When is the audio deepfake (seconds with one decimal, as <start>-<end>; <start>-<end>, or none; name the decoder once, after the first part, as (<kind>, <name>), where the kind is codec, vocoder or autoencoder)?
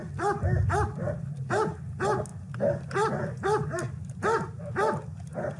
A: none